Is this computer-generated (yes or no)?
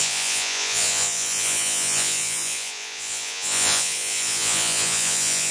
yes